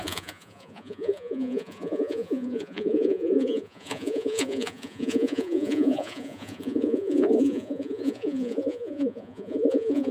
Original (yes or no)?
no